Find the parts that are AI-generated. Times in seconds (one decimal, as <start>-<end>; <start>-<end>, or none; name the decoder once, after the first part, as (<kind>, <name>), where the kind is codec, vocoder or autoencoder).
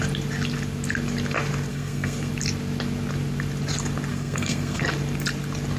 1.7-2.3 (codec, SNAC); 4.1-4.8